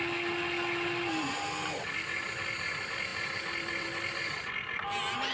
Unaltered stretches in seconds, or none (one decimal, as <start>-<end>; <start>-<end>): 0.0-5.3